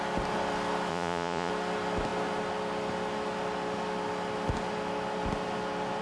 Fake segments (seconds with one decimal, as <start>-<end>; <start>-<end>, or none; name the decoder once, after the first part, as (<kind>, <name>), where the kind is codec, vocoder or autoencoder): 0.9-1.5 (vocoder, Vocos)